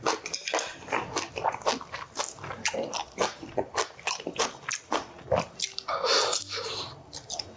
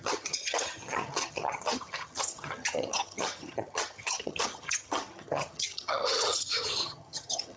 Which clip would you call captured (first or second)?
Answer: first